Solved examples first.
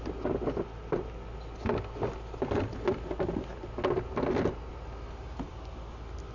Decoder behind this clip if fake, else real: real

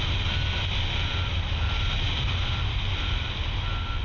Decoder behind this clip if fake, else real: real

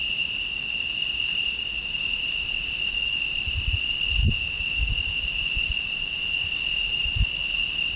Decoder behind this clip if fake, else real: real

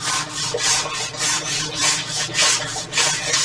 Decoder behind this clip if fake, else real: fake, vocoder, BigVGAN v2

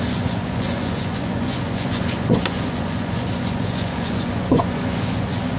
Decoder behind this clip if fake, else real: fake, vocoder, Vocos